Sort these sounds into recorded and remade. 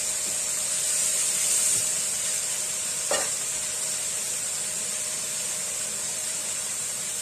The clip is remade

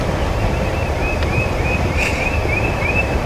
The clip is remade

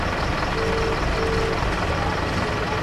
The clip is recorded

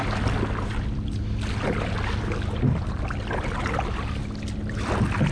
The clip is recorded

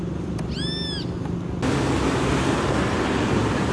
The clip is recorded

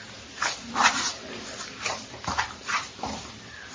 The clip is remade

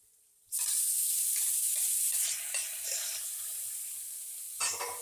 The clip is remade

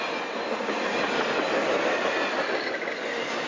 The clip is recorded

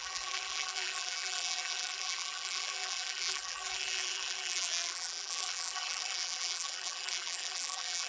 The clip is remade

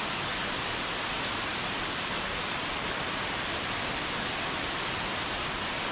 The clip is recorded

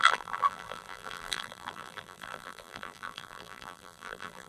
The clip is remade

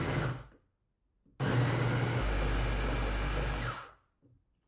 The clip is recorded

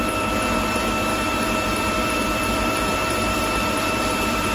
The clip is remade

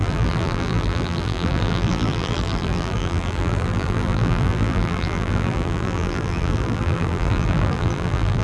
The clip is remade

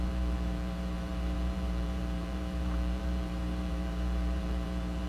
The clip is remade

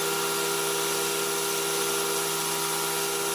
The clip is recorded